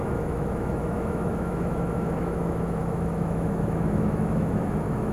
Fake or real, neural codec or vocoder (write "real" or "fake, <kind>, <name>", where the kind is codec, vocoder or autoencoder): fake, autoencoder, DAC-VAE